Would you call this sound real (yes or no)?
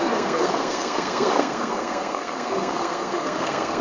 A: no